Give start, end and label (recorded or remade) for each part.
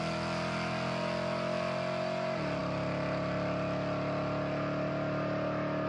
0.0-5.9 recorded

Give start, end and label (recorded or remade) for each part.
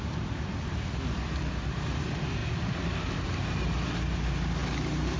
0.0-2.4 recorded; 2.4-3.4 remade; 3.4-5.2 recorded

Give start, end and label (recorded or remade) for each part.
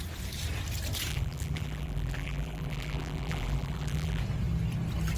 0.0-1.1 recorded; 1.1-4.2 remade; 4.2-5.2 recorded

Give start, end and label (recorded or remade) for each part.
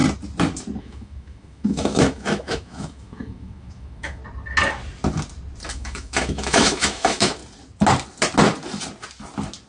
0.0-0.8 recorded; 0.8-4.2 remade; 4.2-5.7 recorded; 5.7-7.4 remade; 7.4-9.7 recorded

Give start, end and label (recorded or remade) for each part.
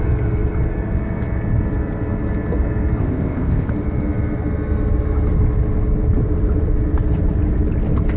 0.0-3.0 recorded; 3.0-3.7 remade; 3.7-8.2 recorded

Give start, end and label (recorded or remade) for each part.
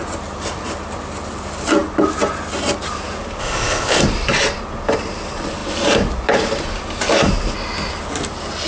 0.0-3.4 recorded; 3.4-4.0 remade; 4.0-8.7 recorded